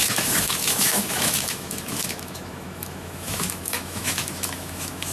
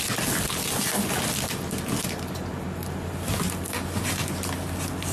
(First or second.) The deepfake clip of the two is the first